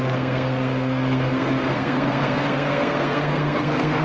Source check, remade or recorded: remade